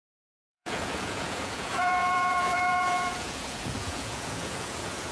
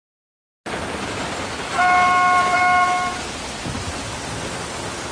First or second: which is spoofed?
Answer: first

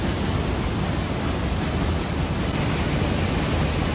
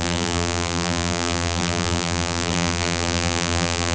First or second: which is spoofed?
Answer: second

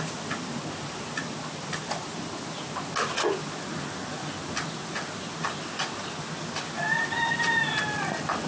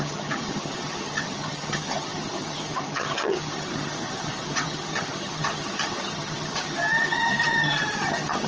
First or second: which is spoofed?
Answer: second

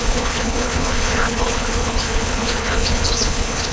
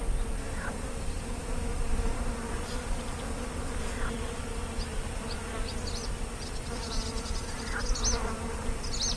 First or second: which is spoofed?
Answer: first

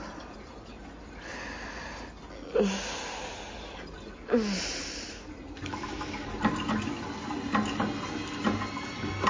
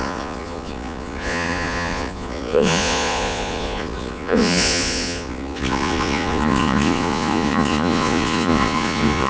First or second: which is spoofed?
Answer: second